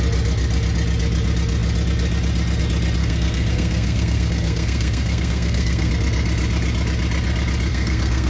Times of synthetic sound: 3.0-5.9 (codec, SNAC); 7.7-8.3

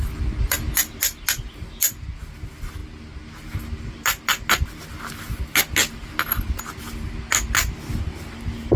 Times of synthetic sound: none